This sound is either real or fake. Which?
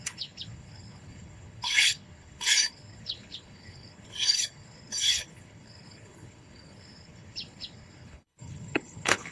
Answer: fake